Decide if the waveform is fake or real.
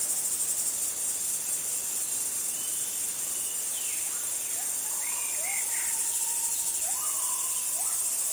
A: real